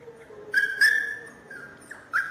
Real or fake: real